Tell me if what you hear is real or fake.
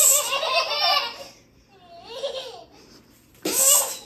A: real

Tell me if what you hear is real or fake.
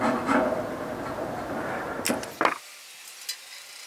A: real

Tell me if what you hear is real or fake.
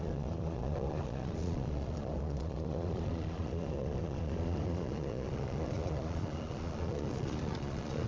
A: fake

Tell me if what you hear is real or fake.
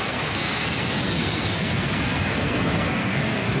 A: fake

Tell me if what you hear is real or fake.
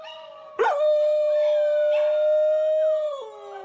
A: real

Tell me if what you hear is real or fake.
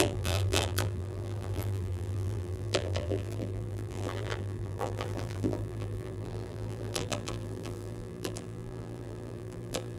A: fake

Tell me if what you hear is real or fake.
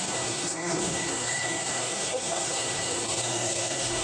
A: fake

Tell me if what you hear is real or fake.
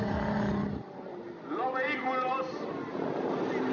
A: real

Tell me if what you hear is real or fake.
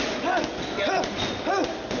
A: real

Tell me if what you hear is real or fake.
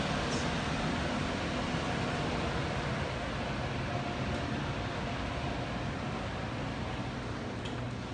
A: real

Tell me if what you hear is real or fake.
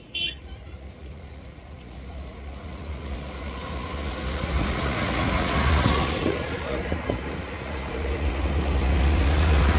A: fake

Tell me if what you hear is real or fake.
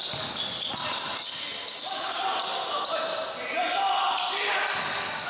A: real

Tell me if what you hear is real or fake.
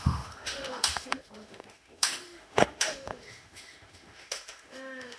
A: fake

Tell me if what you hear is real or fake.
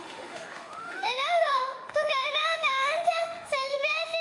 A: fake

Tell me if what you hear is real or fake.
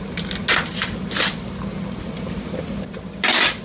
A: real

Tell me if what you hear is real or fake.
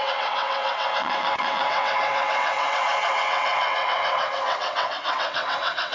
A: fake